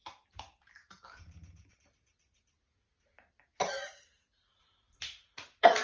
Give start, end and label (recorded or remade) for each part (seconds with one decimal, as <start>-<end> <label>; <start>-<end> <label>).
0.0-5.8 recorded